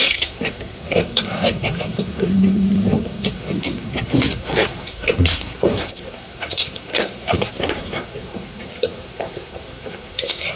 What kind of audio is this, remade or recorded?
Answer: remade